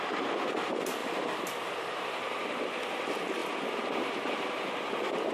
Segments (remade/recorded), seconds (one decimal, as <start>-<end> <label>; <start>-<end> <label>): 0.0-5.3 recorded